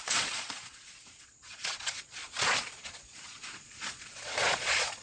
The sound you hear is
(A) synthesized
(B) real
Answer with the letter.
A